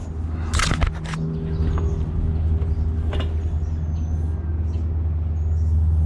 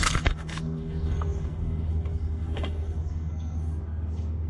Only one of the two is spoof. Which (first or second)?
second